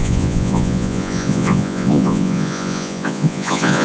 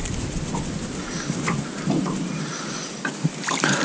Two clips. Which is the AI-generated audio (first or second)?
first